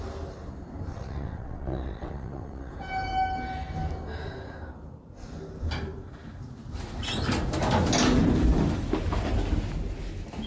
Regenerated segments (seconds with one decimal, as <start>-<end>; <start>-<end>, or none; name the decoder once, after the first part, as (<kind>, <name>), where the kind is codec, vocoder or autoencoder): 0.9-2.7 (vocoder, WaveNeXt)